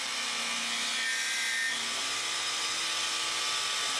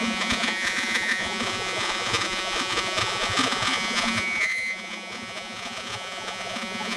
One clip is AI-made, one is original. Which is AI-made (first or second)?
second